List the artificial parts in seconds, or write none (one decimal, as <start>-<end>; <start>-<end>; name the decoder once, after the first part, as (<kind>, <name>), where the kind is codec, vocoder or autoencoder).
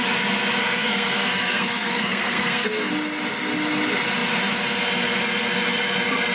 0.6-2.9 (codec, SNAC)